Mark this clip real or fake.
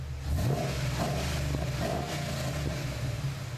real